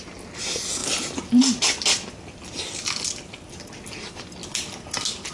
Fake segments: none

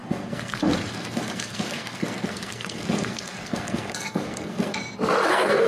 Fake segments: 0.0-4.8; 5.3-5.7

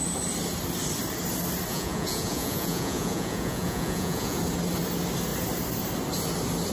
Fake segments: 1.7-4.4

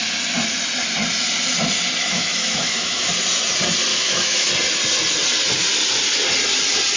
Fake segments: 2.0-3.1; 3.9-4.5